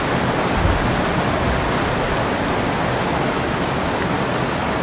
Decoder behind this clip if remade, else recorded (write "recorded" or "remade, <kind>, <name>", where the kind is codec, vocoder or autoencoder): recorded